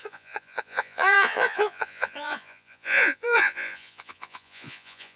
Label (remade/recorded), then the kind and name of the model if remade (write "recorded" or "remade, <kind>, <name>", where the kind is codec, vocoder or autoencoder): remade, vocoder, Vocos